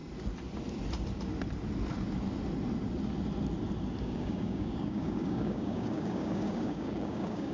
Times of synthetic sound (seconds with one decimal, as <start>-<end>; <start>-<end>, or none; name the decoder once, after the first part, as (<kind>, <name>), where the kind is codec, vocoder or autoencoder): 4.0-7.5 (codec, DAC)